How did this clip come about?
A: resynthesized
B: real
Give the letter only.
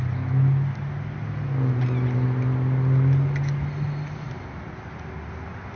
B